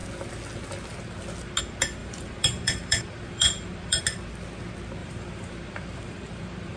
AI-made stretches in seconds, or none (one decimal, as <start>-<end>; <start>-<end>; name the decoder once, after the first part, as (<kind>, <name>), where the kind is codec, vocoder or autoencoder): 2.0-4.0 (vocoder, BigVGAN v2); 5.0-6.8